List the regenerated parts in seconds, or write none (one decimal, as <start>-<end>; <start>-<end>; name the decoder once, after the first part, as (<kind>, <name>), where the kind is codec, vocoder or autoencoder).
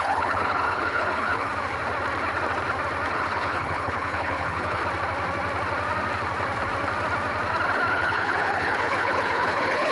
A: 0.0-1.5 (codec, HILCodec); 3.1-4.8; 7.9-9.9